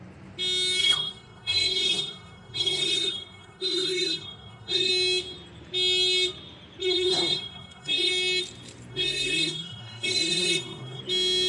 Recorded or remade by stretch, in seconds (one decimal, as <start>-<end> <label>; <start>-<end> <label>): 0.0-0.8 recorded; 0.8-4.9 remade; 4.9-6.8 recorded; 6.8-8.1 remade; 8.1-8.9 recorded; 8.9-11.0 remade; 11.0-11.5 recorded